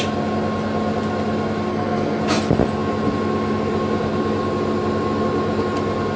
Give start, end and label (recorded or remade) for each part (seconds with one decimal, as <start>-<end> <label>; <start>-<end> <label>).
0.0-1.7 recorded; 1.7-2.2 remade; 2.2-6.2 recorded